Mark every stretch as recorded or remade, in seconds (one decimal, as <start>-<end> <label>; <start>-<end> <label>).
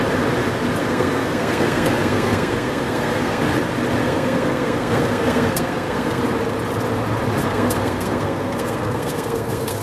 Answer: 0.0-0.8 recorded; 0.8-3.4 remade; 3.4-4.0 recorded; 4.0-6.2 remade; 6.2-7.4 recorded; 7.4-9.8 remade